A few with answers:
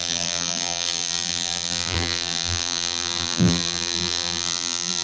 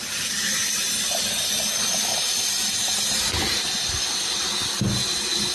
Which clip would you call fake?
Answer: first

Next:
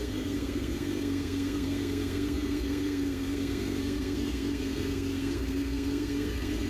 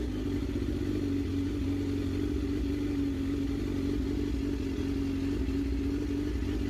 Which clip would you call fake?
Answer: first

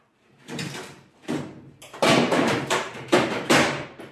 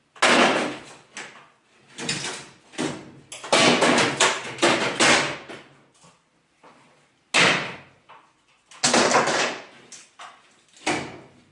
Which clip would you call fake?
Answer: first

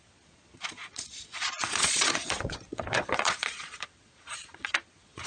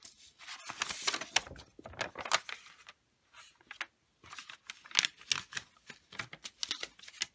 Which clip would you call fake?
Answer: first